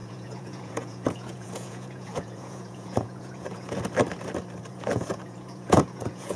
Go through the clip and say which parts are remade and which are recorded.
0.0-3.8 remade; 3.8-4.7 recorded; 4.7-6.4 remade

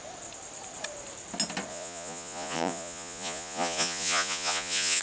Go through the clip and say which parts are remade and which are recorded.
0.0-1.7 recorded; 1.7-5.0 remade